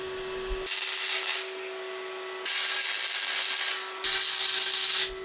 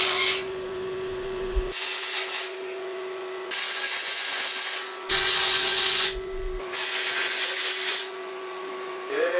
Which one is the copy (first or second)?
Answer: second